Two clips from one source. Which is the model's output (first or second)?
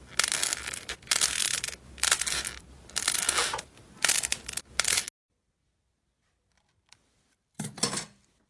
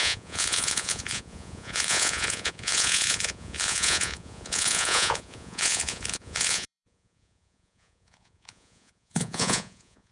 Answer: second